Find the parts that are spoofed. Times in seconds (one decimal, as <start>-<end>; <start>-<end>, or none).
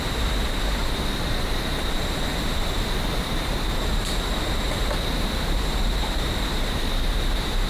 0.0-2.3; 3.2-7.7